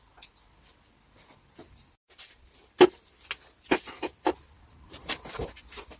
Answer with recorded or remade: recorded